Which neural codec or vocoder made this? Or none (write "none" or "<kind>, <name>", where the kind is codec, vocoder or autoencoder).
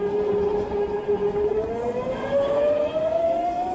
none